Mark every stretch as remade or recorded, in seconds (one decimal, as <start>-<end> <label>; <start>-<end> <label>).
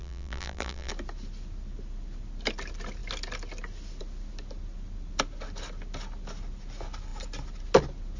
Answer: 0.0-0.9 remade; 0.9-8.2 recorded